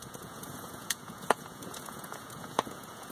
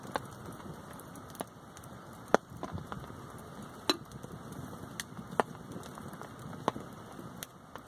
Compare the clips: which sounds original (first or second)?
second